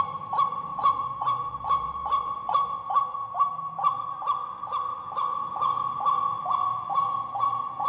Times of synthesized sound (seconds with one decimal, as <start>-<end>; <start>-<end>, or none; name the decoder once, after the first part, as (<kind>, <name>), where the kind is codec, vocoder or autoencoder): 0.7-2.8 (vocoder, WaveNeXt)